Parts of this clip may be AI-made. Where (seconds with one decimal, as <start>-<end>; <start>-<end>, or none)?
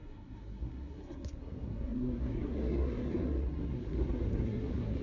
0.0-5.0